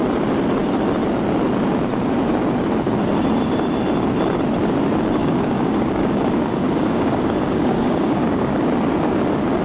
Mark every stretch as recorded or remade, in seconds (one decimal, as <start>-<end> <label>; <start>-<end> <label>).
0.0-5.2 recorded; 5.2-8.5 remade; 8.5-9.6 recorded